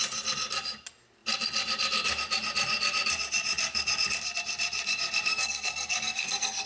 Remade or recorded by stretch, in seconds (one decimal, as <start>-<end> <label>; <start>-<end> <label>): 0.0-5.3 recorded; 5.3-6.7 remade